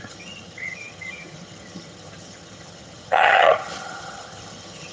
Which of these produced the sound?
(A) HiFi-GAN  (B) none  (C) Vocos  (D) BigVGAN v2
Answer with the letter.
A